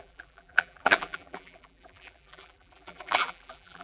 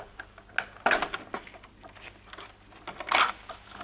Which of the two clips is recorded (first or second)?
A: second